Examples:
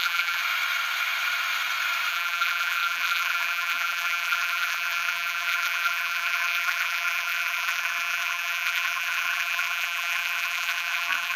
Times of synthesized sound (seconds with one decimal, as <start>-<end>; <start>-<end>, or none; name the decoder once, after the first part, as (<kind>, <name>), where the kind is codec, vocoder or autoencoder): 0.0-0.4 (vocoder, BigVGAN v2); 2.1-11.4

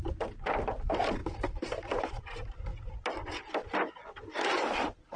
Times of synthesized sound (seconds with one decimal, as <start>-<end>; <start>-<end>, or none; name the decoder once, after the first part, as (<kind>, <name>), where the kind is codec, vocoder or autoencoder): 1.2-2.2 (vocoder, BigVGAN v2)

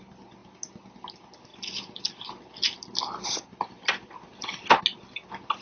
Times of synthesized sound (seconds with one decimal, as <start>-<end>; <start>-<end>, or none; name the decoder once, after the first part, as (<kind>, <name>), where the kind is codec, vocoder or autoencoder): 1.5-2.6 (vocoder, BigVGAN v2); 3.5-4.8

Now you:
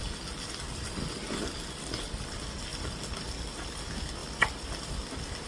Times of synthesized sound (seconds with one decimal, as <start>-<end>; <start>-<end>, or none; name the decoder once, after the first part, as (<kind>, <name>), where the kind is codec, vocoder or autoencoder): none